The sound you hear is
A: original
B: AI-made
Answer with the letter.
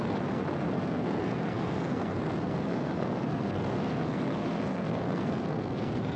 B